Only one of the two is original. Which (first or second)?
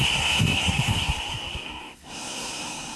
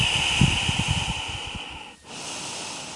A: second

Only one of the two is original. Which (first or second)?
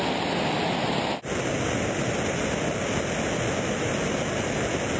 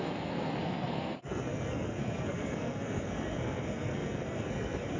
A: first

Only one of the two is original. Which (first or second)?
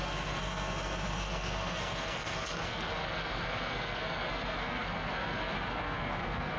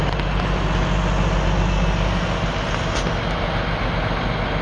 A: second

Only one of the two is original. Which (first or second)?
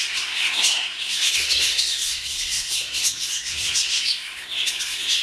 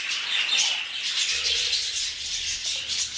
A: second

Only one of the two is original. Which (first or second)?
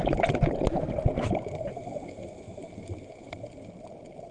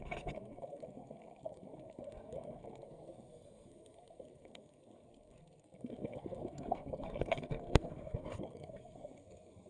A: first